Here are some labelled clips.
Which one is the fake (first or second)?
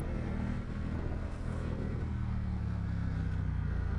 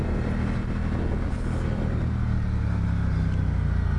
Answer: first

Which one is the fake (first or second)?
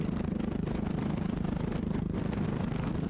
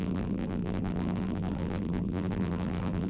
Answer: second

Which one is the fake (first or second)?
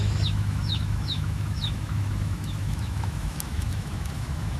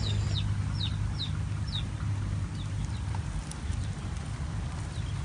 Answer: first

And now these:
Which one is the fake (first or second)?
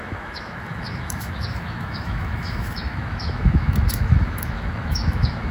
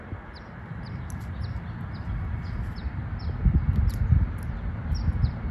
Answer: first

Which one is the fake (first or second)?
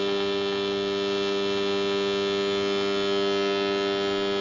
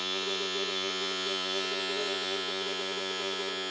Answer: second